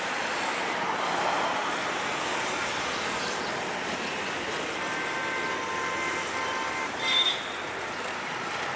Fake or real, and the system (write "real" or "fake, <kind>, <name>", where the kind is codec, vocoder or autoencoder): real